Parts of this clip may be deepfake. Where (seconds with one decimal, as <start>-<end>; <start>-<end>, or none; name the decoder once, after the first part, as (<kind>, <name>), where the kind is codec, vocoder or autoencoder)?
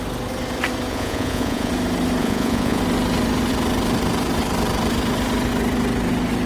0.9-1.7 (vocoder, Vocos); 2.2-2.8